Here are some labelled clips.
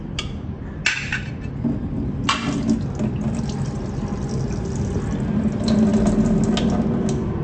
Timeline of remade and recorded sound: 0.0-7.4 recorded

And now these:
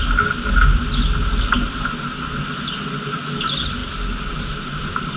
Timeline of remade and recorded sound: 0.0-5.2 recorded